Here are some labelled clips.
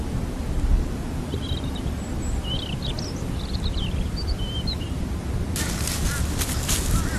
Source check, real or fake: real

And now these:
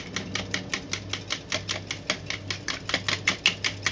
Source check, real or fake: real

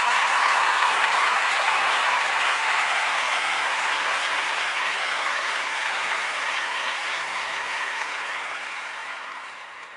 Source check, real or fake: fake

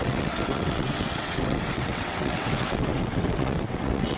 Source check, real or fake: fake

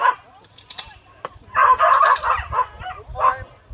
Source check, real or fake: real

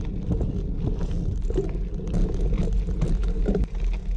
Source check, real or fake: real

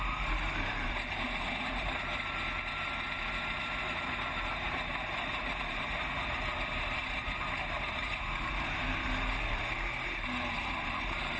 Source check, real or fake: fake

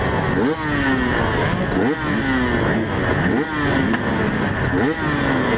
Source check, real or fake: real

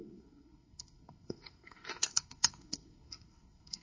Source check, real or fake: fake